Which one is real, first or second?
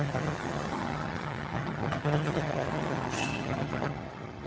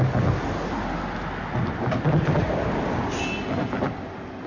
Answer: second